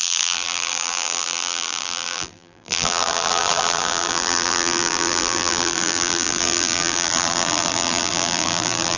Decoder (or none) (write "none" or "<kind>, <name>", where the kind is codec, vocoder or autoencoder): vocoder, BigVGAN v2